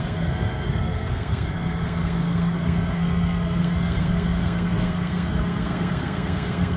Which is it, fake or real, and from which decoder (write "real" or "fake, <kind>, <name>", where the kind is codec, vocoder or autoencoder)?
fake, codec, SNAC